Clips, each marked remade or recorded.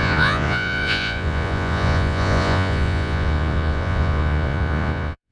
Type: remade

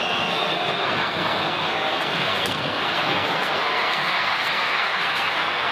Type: remade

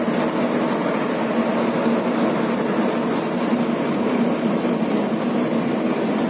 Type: recorded